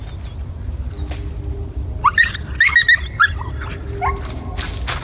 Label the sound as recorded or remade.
recorded